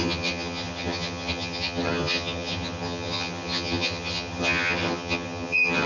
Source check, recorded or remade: remade